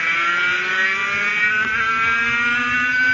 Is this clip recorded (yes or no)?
yes